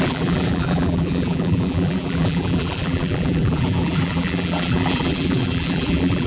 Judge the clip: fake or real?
fake